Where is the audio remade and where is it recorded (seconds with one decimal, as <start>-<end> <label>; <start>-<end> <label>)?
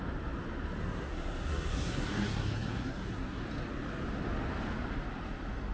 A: 0.0-0.8 recorded; 0.8-3.4 remade; 3.4-5.7 recorded